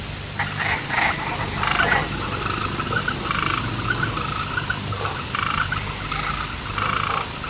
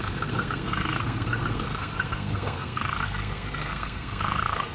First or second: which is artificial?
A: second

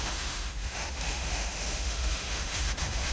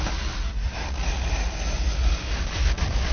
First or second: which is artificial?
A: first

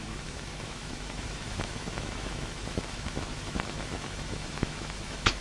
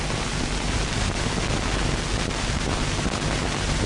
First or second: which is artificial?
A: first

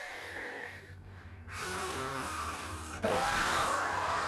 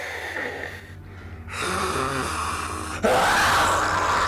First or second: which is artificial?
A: first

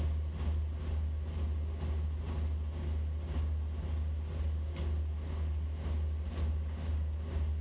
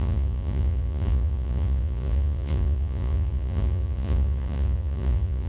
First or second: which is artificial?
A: second